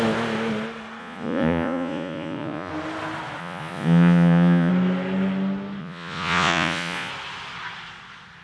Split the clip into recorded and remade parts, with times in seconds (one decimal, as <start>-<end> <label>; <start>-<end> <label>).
0.0-1.0 recorded; 1.0-2.7 remade; 2.7-3.4 recorded; 3.4-4.7 remade; 4.7-5.8 recorded; 5.8-7.1 remade; 7.1-8.4 recorded